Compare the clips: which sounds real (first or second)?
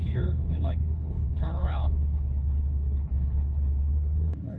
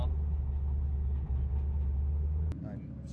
second